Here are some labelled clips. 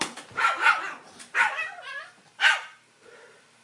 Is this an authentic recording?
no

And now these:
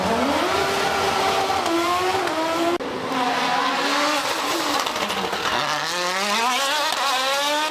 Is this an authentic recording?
yes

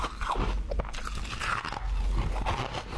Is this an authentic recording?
yes